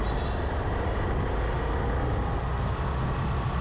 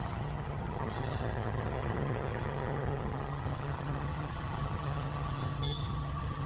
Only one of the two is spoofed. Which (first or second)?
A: second